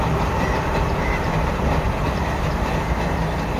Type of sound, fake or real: fake